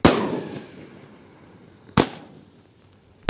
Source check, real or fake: real